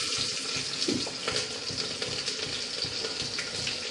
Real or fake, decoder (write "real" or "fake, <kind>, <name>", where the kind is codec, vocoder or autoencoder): real